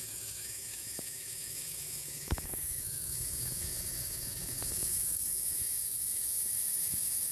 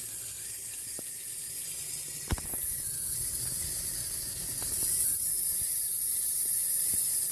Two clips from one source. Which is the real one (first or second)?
second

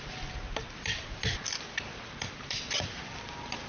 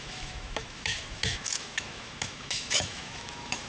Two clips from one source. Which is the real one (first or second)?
first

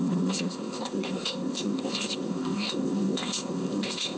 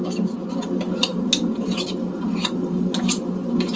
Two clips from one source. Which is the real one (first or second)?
second